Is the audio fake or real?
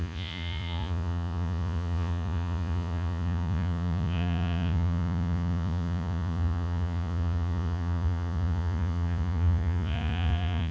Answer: fake